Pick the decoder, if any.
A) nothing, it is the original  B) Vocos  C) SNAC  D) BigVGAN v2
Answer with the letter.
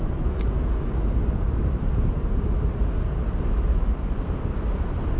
A